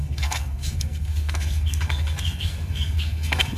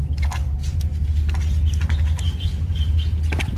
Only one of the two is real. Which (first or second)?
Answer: second